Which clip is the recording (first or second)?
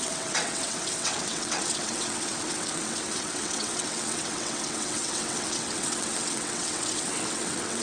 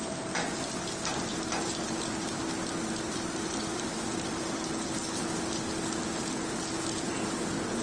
second